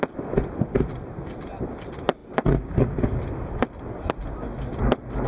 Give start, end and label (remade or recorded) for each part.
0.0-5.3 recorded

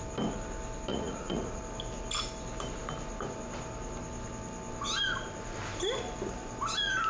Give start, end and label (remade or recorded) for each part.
0.0-0.9 recorded; 0.9-1.6 remade; 1.6-7.1 recorded

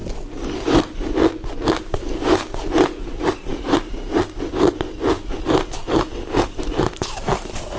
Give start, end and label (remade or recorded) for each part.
0.0-7.8 recorded

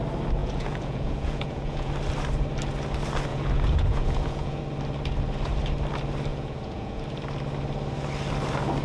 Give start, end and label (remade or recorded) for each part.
0.0-0.4 recorded; 0.4-1.9 remade; 1.9-3.3 recorded; 3.3-4.6 remade; 4.6-6.3 recorded; 6.3-7.0 remade; 7.0-8.8 recorded